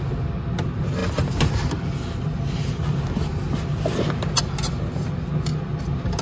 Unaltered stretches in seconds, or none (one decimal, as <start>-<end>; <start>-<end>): 0.0-6.2